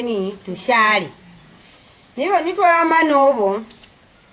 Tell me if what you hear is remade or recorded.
remade